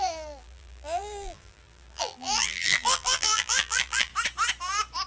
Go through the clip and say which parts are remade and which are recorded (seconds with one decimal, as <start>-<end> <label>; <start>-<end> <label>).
0.0-4.1 remade; 4.1-5.1 recorded